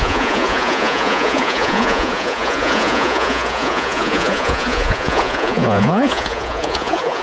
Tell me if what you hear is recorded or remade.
remade